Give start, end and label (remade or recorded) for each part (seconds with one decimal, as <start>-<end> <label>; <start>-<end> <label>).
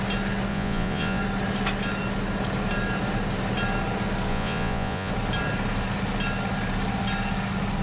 0.0-0.5 recorded; 0.5-1.2 remade; 1.2-4.3 recorded; 4.3-5.1 remade; 5.1-7.8 recorded